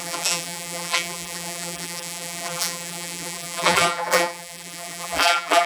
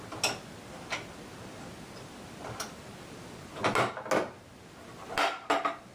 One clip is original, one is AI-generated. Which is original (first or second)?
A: second